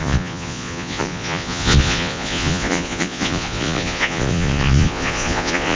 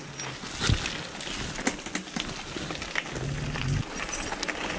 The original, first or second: second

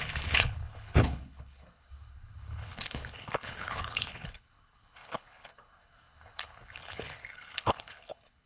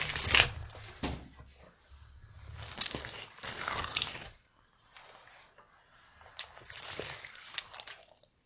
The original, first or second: second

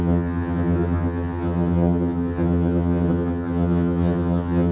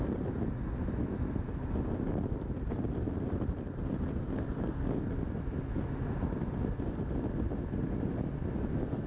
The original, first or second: second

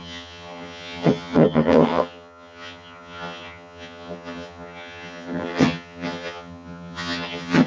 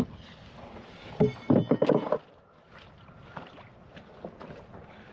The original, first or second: second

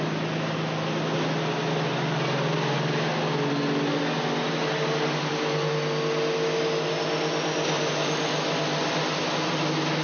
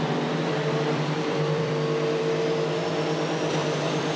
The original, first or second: first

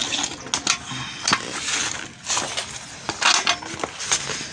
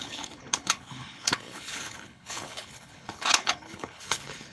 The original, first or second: first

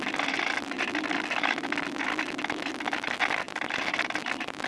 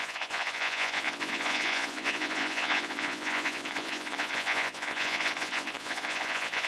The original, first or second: first